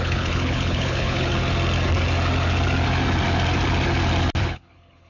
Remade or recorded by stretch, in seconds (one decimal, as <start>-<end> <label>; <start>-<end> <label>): 0.0-1.3 remade; 1.3-4.4 recorded; 4.4-5.1 remade